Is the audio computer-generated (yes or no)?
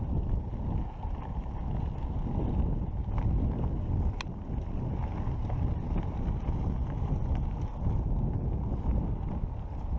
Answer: no